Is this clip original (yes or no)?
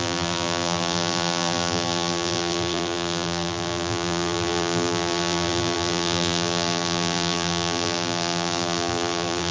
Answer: no